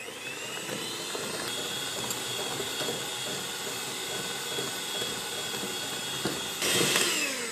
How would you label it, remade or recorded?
recorded